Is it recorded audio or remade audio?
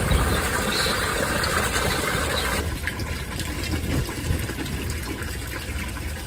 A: recorded